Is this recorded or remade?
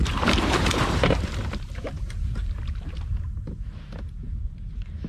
remade